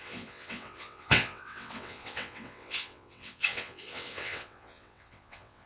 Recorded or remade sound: remade